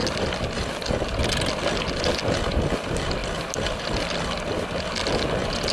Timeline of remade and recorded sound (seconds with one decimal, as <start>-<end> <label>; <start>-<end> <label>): 0.0-5.7 recorded